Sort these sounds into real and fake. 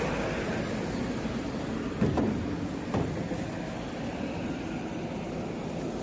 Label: real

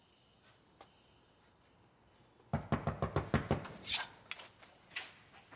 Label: real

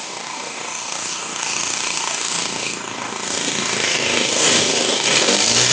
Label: fake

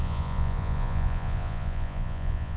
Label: fake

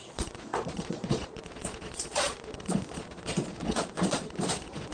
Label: fake